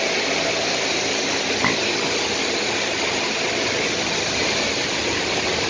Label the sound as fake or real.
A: real